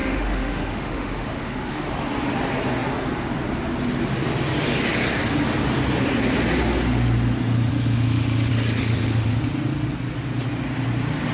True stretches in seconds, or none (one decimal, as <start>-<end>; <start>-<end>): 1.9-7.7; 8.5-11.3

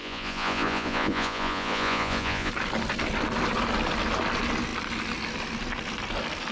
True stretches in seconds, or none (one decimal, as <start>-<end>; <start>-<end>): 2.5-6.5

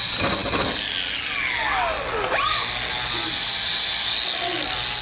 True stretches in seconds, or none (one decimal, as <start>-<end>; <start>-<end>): 0.0-5.0